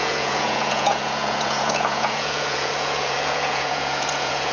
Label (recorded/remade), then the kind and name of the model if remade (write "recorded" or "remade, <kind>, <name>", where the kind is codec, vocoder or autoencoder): remade, vocoder, Vocos